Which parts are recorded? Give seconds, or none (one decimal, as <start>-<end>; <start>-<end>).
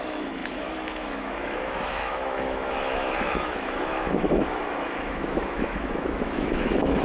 none